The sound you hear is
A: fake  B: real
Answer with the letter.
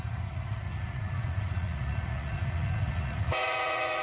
A